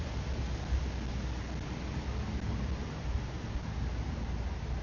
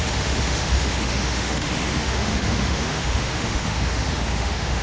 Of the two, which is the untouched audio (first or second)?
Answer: first